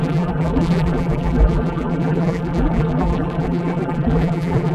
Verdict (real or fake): fake